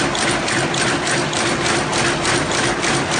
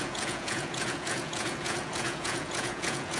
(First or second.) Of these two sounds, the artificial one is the second